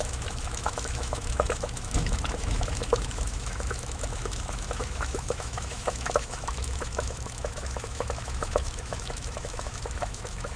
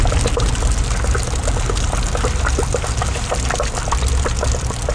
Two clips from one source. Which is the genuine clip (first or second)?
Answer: second